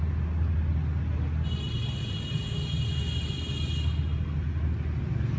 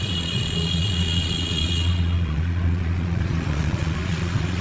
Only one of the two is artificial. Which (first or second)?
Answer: second